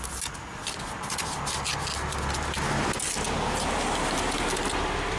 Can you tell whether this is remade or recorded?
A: recorded